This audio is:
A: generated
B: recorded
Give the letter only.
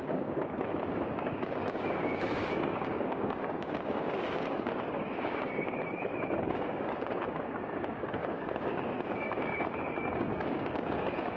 A